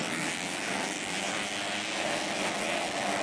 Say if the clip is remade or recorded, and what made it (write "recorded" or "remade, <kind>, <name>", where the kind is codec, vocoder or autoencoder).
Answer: recorded